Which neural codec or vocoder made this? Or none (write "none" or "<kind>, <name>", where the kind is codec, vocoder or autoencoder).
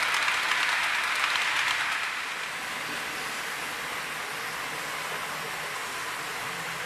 none